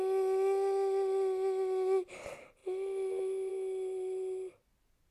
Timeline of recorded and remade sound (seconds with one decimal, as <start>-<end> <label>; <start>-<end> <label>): 0.0-5.1 recorded